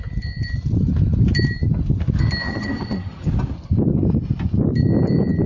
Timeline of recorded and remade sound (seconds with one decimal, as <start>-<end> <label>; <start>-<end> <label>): 0.0-2.4 recorded; 2.4-3.3 remade; 3.3-5.5 recorded